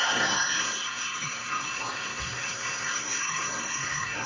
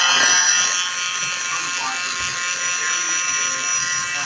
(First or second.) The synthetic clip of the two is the first